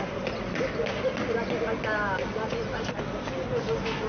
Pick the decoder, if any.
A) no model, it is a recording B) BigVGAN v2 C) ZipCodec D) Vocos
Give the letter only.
A